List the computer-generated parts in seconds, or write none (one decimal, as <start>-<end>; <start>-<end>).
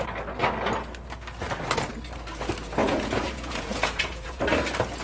2.8-4.4